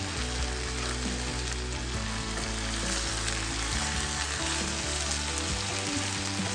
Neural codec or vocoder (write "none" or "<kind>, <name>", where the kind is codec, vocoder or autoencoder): none